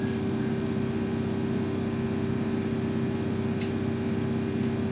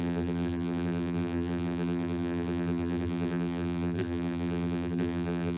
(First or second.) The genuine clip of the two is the first